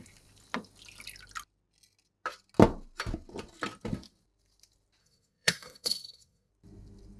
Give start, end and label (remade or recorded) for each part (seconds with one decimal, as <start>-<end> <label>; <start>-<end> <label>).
0.0-5.0 recorded; 5.0-6.5 remade; 6.5-7.2 recorded